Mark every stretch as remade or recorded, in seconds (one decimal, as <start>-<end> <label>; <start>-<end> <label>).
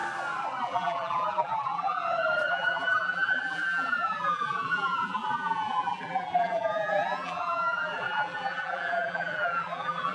0.0-0.6 recorded; 0.6-2.0 remade; 2.0-2.5 recorded; 2.5-10.1 remade